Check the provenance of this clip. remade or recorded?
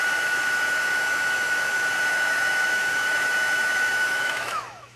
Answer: remade